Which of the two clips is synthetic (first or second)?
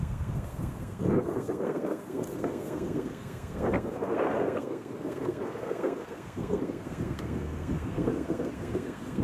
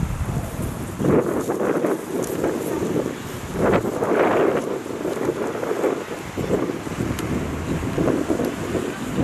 first